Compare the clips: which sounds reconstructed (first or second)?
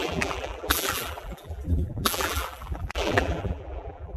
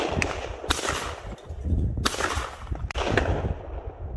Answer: first